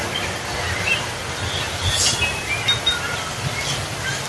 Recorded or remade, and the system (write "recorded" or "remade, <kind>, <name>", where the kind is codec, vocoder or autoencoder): recorded